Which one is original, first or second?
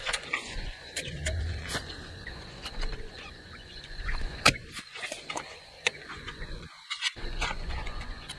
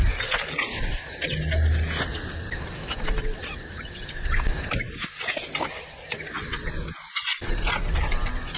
second